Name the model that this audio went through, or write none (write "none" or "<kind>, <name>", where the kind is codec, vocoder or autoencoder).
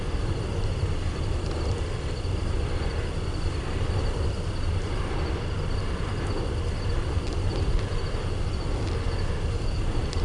none